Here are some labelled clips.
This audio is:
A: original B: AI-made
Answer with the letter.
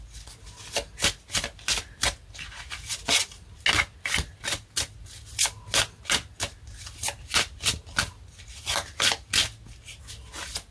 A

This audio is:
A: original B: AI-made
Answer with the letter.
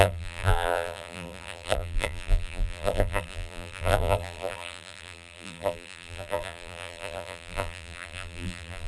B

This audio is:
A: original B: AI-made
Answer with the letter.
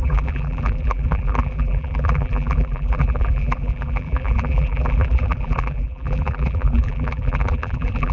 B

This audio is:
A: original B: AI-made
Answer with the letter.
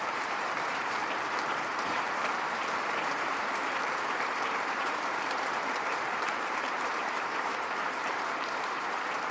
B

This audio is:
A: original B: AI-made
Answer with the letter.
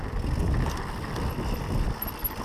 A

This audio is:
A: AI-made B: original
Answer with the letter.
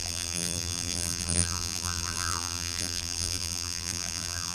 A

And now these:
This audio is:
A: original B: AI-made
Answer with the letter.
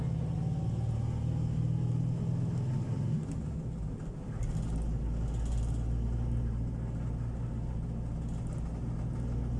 A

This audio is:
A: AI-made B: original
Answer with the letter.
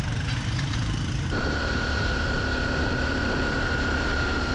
A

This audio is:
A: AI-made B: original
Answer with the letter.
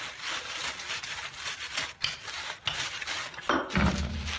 B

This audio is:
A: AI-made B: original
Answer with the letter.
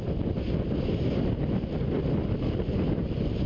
B